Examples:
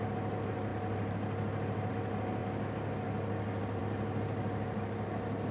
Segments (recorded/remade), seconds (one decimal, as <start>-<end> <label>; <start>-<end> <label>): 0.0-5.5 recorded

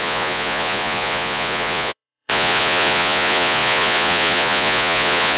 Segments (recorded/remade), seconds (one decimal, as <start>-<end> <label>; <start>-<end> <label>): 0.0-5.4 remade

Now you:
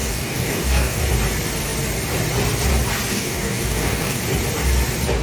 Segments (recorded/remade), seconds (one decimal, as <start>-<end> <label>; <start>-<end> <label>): 0.0-1.0 remade; 1.0-3.1 recorded; 3.1-4.2 remade; 4.2-5.2 recorded

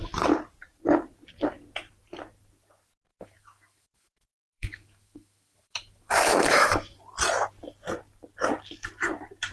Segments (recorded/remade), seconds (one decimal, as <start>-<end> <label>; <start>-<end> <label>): 0.0-3.1 recorded; 3.1-7.0 remade; 7.0-9.5 recorded